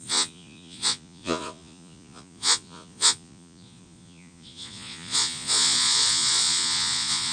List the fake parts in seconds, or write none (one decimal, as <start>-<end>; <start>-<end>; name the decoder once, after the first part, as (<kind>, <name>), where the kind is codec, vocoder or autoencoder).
0.0-7.3 (vocoder, Vocos)